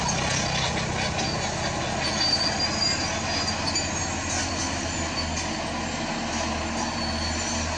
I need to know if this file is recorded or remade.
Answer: recorded